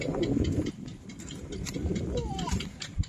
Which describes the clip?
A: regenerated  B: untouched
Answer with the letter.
A